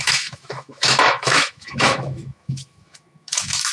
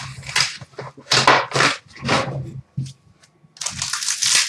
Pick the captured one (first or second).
second